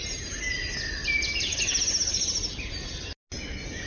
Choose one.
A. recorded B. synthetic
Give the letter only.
A